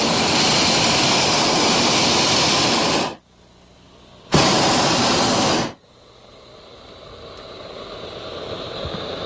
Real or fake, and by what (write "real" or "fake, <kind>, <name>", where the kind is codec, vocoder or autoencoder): real